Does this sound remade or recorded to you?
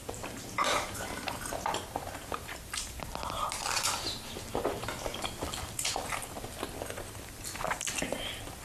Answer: recorded